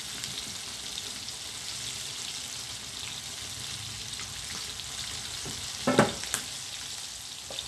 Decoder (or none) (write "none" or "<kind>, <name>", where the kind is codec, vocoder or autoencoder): none